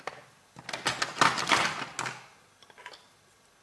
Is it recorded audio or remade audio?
recorded